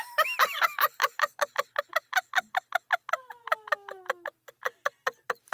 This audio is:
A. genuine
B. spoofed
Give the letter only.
A